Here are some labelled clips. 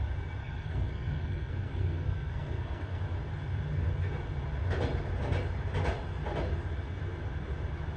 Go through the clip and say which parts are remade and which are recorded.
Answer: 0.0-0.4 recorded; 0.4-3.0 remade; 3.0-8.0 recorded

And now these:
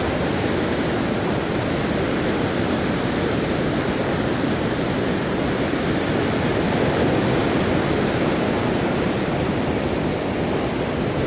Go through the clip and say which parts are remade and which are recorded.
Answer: 0.0-11.3 recorded